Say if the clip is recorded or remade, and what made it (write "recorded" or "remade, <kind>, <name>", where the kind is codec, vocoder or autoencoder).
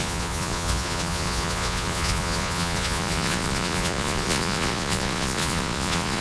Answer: remade, vocoder, Vocos